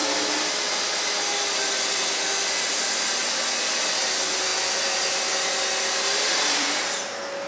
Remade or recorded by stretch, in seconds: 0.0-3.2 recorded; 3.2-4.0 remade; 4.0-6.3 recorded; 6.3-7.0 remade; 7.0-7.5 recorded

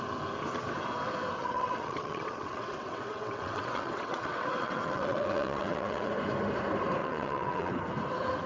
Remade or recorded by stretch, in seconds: 0.0-1.4 recorded; 1.4-6.1 remade; 6.1-7.0 recorded; 7.0-7.7 remade; 7.7-8.5 recorded

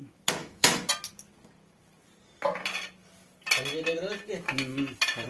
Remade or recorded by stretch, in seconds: 0.0-0.4 recorded; 0.4-0.9 remade; 0.9-5.3 recorded

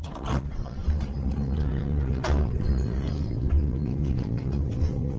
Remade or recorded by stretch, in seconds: 0.0-5.2 remade

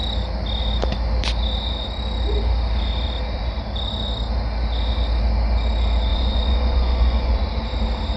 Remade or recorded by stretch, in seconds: 0.0-6.1 recorded; 6.1-7.4 remade; 7.4-8.2 recorded

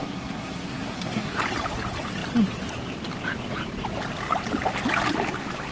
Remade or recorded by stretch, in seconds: 0.0-1.4 remade; 1.4-5.7 recorded

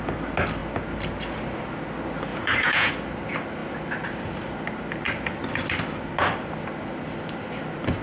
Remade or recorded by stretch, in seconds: 0.0-2.3 recorded; 2.3-2.9 remade; 2.9-8.0 recorded